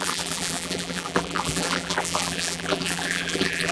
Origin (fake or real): fake